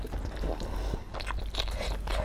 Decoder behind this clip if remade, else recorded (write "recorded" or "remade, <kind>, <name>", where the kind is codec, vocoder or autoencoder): recorded